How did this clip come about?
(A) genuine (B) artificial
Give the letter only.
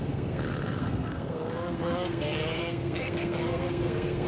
B